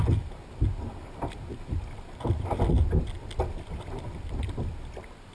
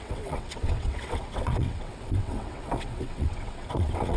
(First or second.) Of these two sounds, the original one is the first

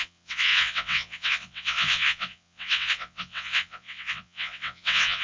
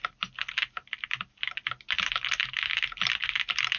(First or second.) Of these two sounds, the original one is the second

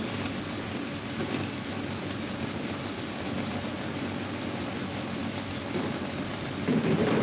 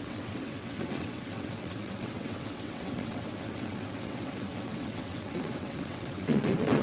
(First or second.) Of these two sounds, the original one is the first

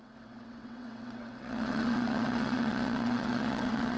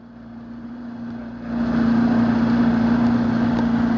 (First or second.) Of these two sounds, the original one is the second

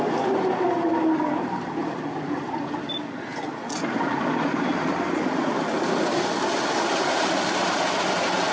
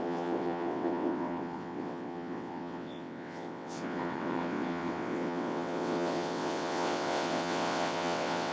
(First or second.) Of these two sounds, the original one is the first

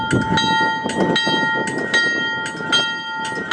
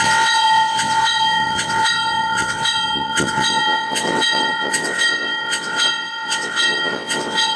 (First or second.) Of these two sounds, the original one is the first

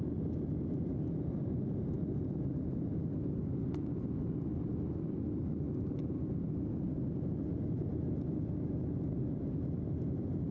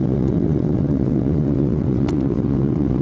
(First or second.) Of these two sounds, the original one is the first